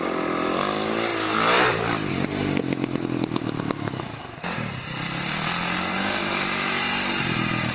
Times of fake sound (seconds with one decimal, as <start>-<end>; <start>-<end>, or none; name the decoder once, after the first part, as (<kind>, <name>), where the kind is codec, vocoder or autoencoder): none